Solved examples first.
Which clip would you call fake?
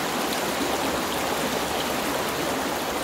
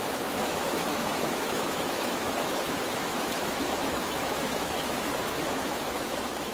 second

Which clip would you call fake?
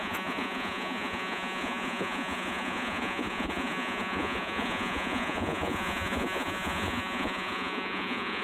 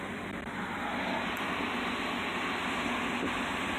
first